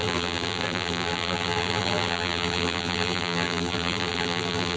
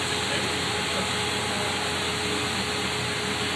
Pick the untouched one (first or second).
second